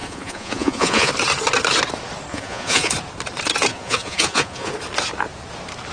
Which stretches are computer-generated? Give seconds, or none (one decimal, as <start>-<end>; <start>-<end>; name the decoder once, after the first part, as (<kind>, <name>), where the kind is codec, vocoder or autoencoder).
0.0-1.1 (vocoder, Vocos); 2.3-2.9; 3.7-4.7